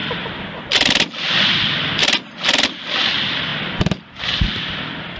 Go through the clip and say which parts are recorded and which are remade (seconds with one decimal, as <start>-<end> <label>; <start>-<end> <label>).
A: 0.0-5.2 recorded